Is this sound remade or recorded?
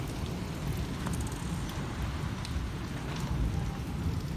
recorded